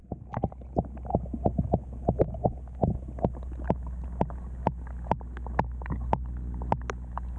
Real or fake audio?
real